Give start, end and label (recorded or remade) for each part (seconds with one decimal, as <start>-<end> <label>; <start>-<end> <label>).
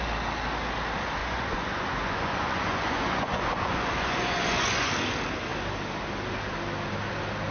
0.0-1.2 recorded; 1.2-4.9 remade; 4.9-7.5 recorded